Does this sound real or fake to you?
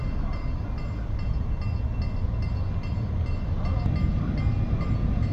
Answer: real